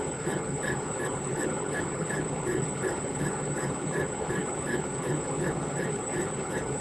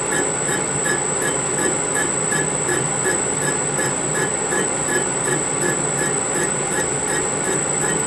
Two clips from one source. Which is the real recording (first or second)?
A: second